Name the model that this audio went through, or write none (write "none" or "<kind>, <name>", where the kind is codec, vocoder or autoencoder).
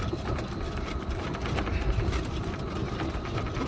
none